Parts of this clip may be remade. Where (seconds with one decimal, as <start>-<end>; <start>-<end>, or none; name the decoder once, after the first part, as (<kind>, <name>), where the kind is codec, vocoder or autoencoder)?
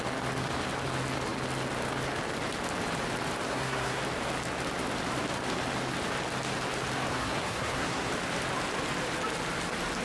3.5-4.0 (codec, SNAC); 7.1-8.1